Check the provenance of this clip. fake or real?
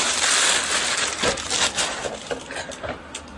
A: real